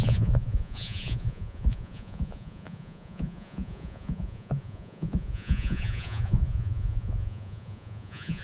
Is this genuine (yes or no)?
no